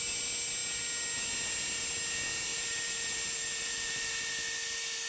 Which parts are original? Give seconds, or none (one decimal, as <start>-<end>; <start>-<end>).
0.0-2.5; 4.1-5.1